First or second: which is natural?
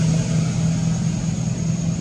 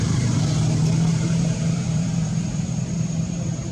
first